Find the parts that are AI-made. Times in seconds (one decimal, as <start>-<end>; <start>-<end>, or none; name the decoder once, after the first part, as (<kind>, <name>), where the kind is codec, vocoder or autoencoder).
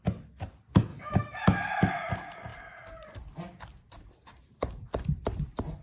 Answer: 0.9-1.9 (autoencoder, DAC-VAE)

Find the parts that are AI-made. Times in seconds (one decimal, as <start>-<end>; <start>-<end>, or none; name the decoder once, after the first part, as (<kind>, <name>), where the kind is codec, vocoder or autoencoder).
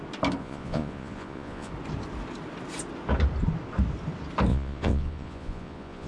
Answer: 0.4-1.7 (vocoder, Vocos); 4.5-6.1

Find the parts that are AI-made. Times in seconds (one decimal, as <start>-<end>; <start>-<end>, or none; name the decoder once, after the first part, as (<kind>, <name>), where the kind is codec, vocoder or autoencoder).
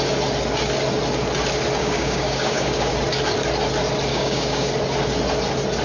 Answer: 1.8-2.9 (codec, DAC); 4.1-4.7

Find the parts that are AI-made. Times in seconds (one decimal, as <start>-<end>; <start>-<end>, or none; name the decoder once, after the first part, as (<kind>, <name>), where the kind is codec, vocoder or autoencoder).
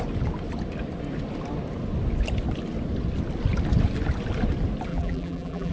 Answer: 4.9-5.7 (vocoder, BigVGAN v2)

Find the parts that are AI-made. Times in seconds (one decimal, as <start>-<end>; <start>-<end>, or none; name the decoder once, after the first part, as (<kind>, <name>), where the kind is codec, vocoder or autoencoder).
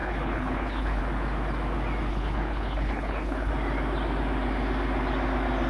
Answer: 0.0-1.0 (codec, HILCodec); 2.1-3.5